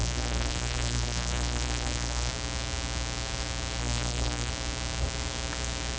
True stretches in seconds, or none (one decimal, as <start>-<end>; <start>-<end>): 2.3-3.8; 4.5-6.0